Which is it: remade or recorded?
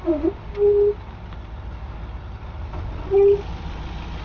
recorded